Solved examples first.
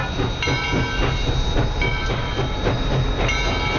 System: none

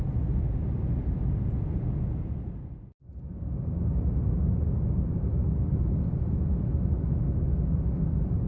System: none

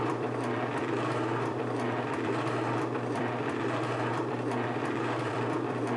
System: vocoder, BigVGAN v2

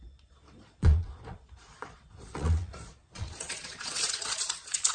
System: vocoder, Vocos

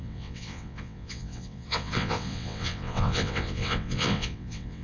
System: vocoder, WaveNeXt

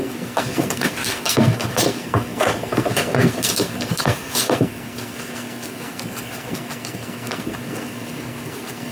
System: codec, SNAC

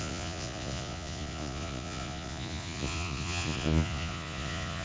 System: vocoder, Vocos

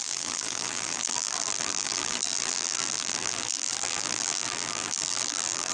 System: vocoder, BigVGAN v2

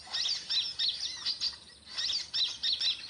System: none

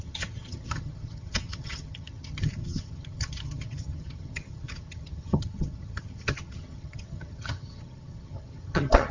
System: vocoder, HiFi-GAN